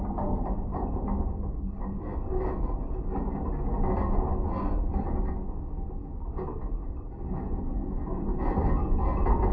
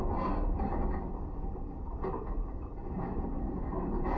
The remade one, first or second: second